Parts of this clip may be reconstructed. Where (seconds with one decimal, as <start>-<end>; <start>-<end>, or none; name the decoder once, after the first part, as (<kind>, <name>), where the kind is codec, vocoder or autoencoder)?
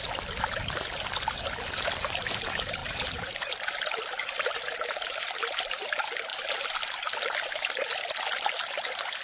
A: 2.8-3.5 (vocoder, BigVGAN v2)